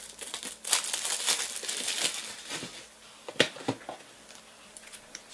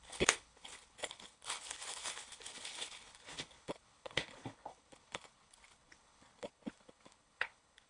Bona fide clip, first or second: first